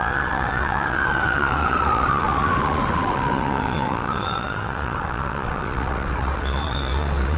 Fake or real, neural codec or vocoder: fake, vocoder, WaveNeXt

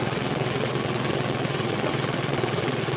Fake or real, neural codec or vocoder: fake, vocoder, WaveNeXt